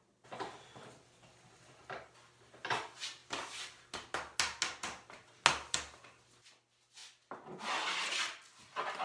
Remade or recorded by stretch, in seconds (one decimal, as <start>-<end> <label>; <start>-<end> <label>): 0.0-9.0 recorded